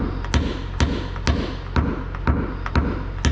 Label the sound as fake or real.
real